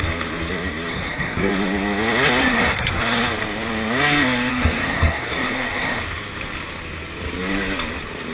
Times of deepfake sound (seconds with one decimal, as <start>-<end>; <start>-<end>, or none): 0.9-1.5; 2.4-3.0; 4.5-6.0